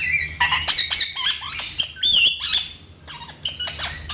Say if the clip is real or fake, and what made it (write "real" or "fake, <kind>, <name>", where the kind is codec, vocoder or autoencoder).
real